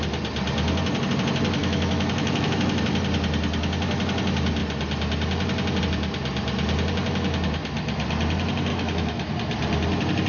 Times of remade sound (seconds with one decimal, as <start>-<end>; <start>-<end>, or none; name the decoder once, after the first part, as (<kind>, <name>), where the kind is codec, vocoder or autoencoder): 1.6-2.8 (autoencoder, DAC-VAE); 8.7-9.3